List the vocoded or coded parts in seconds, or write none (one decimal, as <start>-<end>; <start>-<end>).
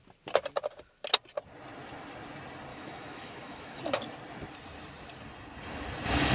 2.7-3.8